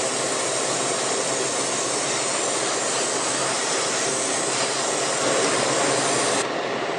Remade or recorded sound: recorded